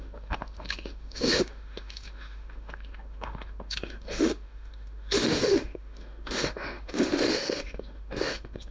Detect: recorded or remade remade